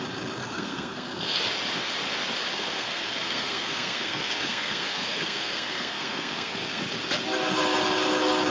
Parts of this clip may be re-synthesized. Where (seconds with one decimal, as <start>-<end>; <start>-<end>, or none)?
0.4-1.4; 2.5-6.8